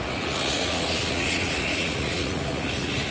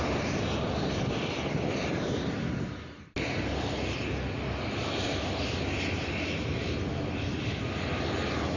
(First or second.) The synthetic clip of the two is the first